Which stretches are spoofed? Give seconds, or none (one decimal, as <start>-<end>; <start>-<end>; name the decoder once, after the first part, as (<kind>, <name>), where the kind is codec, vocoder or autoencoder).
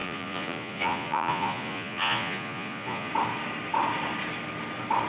0.0-3.1 (vocoder, Vocos)